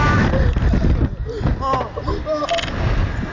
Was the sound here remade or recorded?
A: recorded